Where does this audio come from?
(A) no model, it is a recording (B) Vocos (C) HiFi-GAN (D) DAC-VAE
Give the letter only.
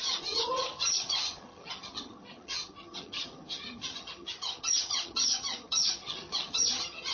C